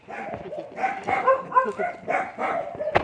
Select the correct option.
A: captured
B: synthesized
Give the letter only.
A